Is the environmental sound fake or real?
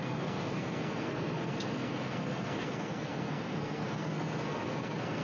fake